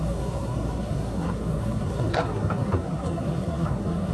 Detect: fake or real fake